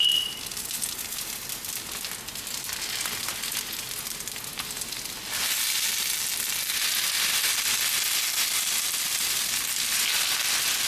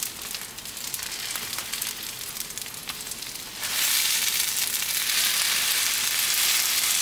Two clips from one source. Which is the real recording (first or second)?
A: first